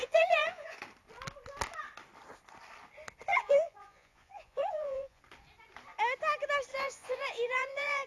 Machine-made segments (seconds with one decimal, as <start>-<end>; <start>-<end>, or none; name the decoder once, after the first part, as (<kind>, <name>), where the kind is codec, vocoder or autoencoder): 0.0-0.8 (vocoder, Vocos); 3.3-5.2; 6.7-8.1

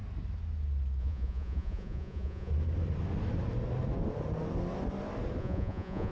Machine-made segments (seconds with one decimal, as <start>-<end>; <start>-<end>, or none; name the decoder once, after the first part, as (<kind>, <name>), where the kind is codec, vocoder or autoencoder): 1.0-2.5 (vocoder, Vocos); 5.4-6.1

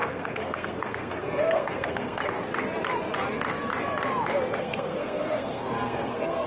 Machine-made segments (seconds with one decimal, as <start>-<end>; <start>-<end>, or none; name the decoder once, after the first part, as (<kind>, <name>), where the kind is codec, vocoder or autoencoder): 0.0-2.2 (codec, SNAC); 4.6-6.5